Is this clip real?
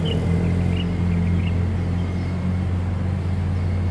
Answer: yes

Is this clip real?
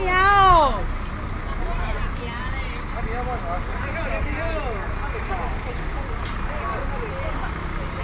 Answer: yes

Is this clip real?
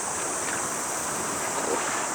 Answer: no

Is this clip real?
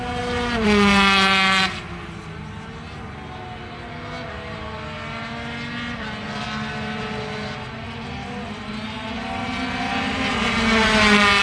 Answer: yes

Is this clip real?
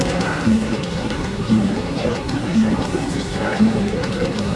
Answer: no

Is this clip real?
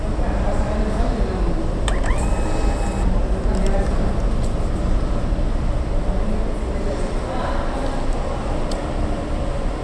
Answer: yes